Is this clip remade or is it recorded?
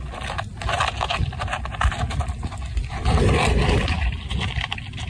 recorded